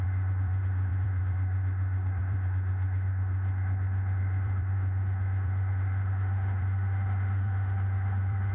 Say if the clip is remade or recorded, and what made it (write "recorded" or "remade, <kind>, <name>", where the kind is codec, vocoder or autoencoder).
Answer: remade, autoencoder, DAC-VAE